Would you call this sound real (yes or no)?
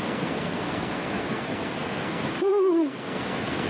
no